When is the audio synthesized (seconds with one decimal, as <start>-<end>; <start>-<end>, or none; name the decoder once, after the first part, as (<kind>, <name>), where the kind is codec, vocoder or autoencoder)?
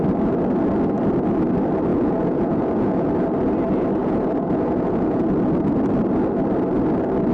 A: 1.9-3.1 (vocoder, Vocos); 4.0-5.2